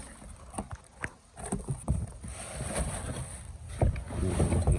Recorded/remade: remade